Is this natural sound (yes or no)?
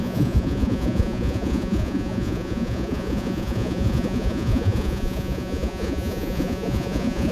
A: no